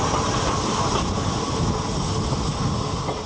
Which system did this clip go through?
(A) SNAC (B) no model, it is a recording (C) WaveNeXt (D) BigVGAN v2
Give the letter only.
B